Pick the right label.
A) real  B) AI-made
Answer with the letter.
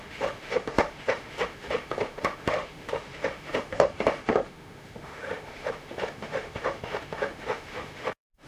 B